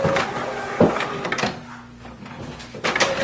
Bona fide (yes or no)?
yes